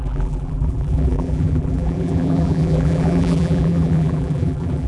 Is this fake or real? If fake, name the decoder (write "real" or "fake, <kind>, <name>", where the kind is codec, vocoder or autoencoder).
fake, vocoder, BigVGAN v2